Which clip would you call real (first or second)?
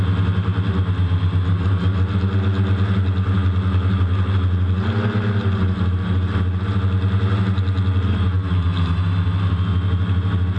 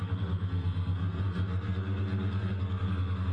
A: first